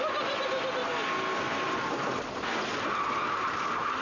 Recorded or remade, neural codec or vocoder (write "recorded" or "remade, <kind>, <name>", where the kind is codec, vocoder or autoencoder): recorded